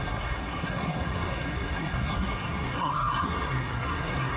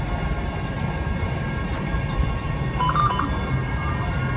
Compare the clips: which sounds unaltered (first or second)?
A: second